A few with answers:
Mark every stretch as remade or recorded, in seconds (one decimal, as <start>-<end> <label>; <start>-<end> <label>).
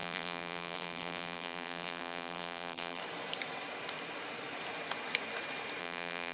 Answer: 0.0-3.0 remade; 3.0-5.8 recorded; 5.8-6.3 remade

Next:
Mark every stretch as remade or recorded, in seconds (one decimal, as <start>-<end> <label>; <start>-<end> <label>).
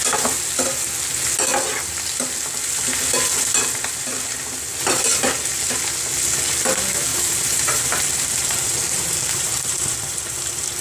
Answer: 0.0-7.1 recorded; 7.1-10.8 remade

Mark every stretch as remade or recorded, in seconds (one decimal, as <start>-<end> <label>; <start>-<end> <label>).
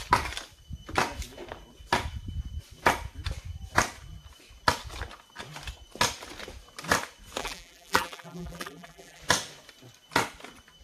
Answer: 0.0-7.4 recorded; 7.4-9.2 remade; 9.2-10.8 recorded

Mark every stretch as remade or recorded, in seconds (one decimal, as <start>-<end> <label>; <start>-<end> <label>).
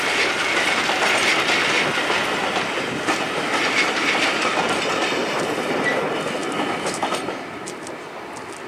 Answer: 0.0-8.7 recorded